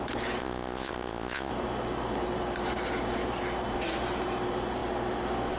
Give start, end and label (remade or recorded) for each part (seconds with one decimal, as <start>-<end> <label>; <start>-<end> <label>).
0.0-0.4 recorded; 0.4-1.5 remade; 1.5-5.6 recorded